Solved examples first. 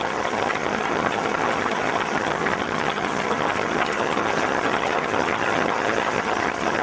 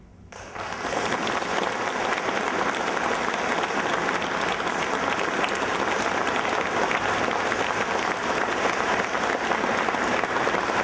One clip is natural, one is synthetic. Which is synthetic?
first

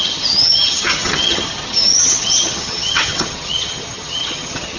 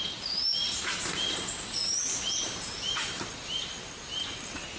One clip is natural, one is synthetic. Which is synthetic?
first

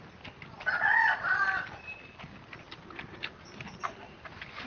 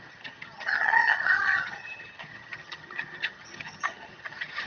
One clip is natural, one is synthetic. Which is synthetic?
second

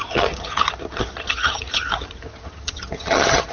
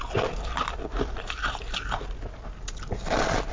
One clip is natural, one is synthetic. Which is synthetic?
first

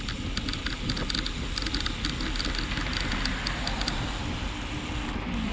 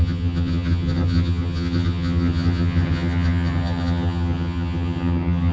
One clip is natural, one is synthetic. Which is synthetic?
second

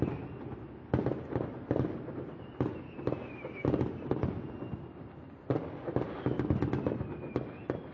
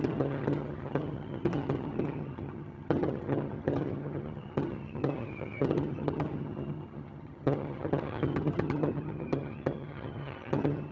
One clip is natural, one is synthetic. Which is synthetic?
second